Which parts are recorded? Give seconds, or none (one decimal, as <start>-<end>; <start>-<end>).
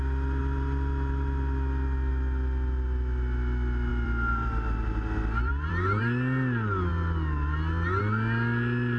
0.0-0.4; 2.1-3.9; 6.0-9.0